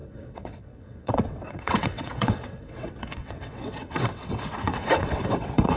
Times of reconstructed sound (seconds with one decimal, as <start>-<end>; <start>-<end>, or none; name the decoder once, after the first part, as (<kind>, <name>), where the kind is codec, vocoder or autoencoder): 0.0-5.8 (vocoder, WaveNeXt)